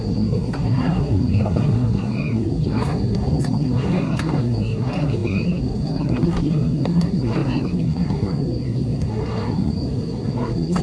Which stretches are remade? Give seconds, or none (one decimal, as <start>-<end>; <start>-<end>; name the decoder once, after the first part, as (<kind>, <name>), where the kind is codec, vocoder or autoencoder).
0.0-10.8 (codec, SNAC)